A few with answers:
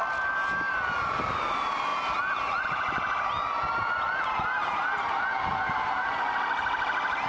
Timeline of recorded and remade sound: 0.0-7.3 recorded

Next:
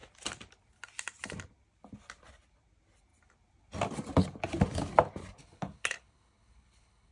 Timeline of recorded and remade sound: 0.0-5.4 recorded; 5.4-7.1 remade

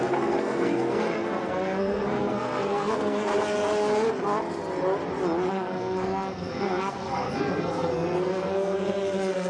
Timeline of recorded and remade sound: 0.0-3.3 remade; 3.3-5.5 recorded; 5.5-9.5 remade

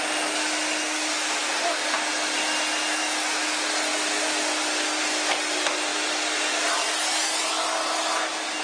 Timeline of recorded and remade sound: 0.0-8.6 recorded

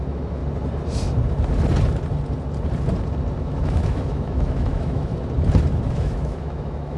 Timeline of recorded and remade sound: 0.0-0.4 remade; 0.4-3.4 recorded; 3.4-5.1 remade; 5.1-5.9 recorded; 5.9-7.0 remade